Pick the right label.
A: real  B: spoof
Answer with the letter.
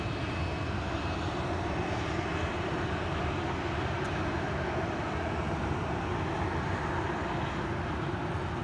A